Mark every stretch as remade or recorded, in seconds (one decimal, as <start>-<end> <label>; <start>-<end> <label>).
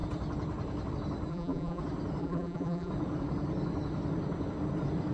0.0-1.3 recorded; 1.3-1.8 remade; 1.8-2.2 recorded; 2.2-2.9 remade; 2.9-5.1 recorded